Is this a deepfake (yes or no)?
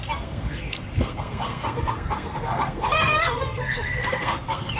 yes